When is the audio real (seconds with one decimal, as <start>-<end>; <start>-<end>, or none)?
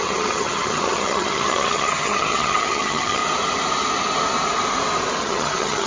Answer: 3.2-5.2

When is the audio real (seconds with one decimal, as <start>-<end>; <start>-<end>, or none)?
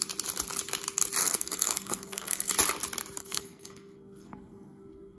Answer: 0.0-1.2; 2.5-3.2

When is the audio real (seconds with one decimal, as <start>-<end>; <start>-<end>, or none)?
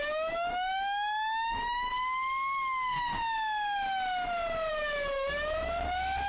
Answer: 1.9-4.7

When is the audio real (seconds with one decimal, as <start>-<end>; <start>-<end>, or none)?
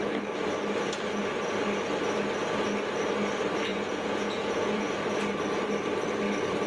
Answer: 0.0-3.7; 4.9-6.7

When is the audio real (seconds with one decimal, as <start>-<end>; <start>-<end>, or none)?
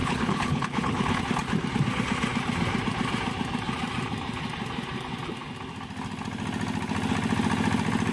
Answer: 1.2-8.1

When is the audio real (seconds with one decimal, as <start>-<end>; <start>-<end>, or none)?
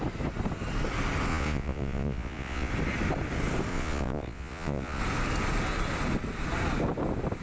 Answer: 0.0-1.3; 2.7-3.7; 5.0-7.4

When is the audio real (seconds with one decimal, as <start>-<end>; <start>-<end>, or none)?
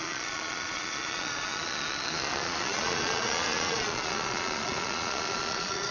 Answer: none